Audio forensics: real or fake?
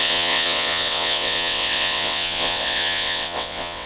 fake